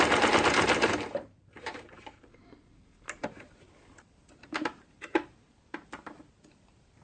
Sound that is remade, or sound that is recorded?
remade